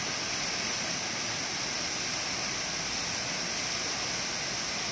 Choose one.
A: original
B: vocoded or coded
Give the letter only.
A